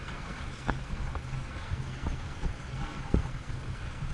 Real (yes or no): no